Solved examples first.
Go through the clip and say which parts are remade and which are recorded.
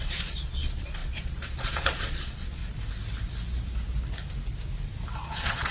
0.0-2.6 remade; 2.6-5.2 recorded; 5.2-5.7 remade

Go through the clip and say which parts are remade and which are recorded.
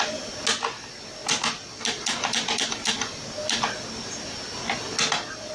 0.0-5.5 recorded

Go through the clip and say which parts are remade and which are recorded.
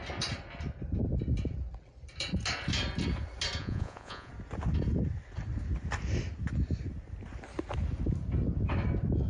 0.0-3.6 recorded; 3.6-4.3 remade; 4.3-9.3 recorded